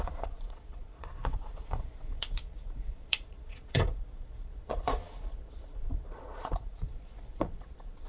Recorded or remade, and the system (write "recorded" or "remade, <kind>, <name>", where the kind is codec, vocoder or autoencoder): remade, vocoder, Vocos